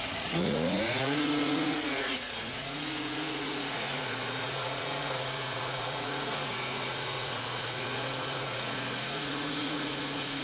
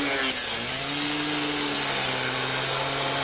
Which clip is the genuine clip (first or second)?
second